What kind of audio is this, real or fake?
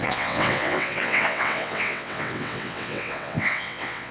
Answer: fake